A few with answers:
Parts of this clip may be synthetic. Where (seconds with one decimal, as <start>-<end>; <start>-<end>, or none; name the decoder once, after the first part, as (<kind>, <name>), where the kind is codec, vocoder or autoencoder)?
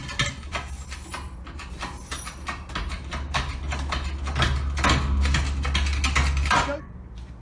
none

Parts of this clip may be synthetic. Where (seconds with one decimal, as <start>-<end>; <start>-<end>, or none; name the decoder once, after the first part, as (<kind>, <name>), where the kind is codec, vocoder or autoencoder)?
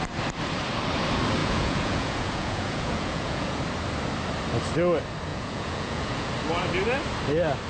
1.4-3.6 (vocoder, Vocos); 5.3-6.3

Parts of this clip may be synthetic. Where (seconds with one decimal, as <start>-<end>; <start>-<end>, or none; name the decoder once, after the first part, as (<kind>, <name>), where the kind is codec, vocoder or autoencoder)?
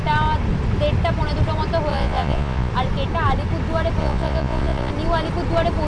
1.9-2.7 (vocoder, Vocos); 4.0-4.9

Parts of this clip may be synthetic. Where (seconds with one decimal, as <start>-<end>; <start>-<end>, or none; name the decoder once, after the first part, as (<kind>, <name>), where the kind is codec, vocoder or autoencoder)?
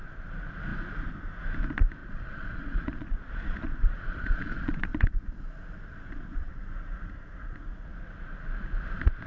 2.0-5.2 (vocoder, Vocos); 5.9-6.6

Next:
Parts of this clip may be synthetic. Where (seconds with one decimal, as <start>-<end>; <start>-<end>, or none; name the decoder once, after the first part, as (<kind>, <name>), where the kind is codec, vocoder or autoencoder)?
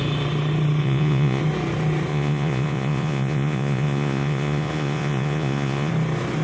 0.8-1.4 (vocoder, Vocos); 2.1-5.9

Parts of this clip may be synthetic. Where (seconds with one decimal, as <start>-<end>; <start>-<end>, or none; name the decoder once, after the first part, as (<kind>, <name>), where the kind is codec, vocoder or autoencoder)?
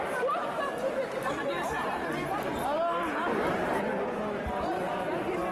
none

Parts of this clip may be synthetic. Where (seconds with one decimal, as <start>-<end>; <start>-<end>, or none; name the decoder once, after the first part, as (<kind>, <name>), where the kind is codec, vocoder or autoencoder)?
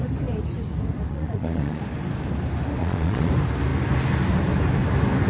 1.1-1.8 (vocoder, Vocos); 2.8-3.3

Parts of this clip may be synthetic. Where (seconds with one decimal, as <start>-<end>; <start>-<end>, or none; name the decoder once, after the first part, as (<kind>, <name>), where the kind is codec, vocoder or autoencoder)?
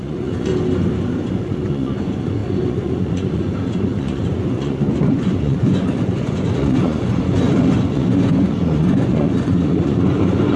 0.0-0.5 (vocoder, Vocos); 1.3-10.6